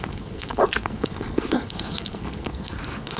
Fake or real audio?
fake